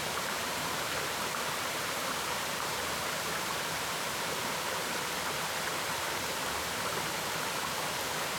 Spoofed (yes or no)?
yes